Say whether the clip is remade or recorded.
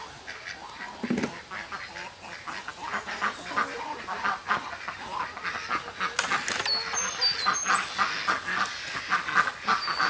recorded